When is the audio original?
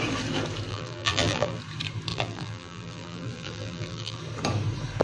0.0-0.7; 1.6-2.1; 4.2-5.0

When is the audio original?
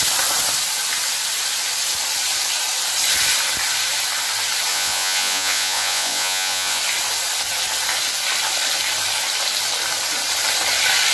0.0-4.7; 6.8-11.1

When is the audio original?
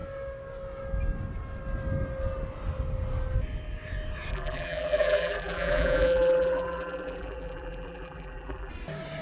0.0-4.3; 8.7-9.2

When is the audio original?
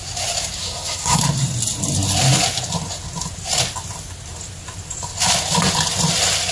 0.0-0.6; 1.2-6.5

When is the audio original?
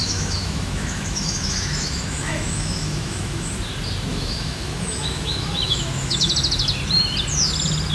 3.5-4.1; 6.3-7.9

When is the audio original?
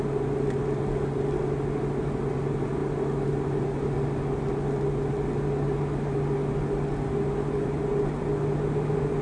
0.0-9.2